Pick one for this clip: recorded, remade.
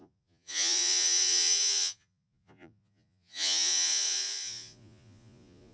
remade